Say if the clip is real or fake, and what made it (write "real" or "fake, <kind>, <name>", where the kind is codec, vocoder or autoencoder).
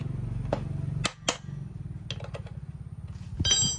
real